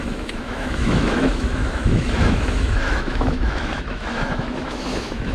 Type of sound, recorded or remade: remade